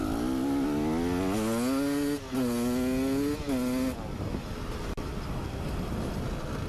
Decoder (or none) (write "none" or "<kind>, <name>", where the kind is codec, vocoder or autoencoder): none